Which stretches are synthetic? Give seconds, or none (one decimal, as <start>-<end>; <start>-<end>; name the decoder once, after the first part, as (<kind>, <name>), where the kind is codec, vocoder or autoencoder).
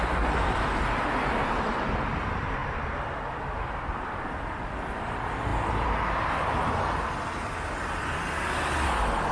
2.6-4.4 (vocoder, BigVGAN v2); 5.5-6.7